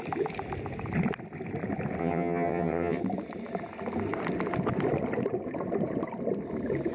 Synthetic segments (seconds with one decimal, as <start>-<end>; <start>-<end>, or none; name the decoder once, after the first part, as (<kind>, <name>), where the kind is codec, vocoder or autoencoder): 2.0-3.0 (vocoder, HiFi-GAN)